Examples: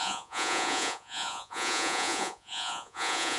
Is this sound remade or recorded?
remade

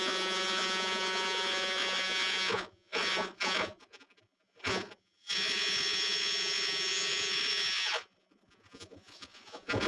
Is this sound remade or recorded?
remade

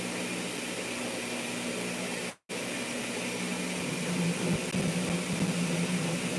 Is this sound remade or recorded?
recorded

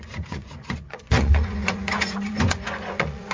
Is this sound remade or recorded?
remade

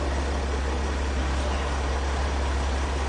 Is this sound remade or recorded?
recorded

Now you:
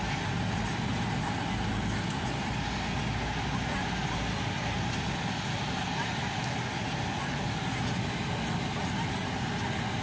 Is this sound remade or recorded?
recorded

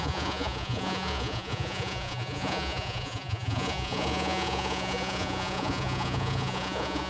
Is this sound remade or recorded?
remade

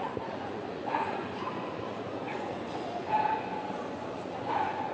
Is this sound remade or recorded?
remade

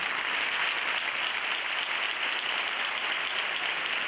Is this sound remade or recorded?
recorded